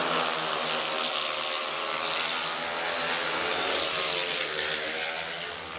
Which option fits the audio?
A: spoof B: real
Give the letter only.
B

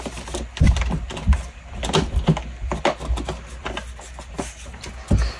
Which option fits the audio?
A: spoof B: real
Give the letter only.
B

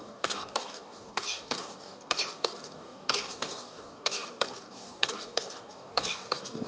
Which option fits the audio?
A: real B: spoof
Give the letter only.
B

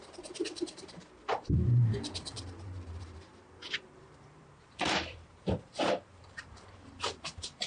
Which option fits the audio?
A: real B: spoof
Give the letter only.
B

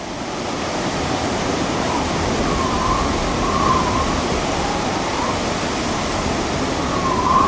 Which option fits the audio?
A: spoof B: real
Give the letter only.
B